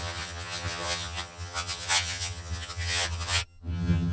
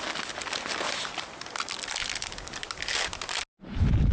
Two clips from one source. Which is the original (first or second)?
second